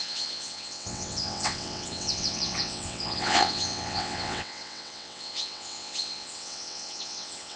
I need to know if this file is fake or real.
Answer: fake